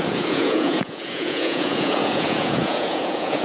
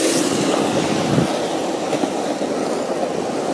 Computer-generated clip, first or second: first